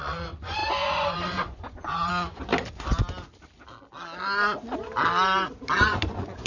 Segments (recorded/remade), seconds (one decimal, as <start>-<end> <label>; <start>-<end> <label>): 0.0-2.5 remade; 2.5-5.8 recorded; 5.8-6.5 remade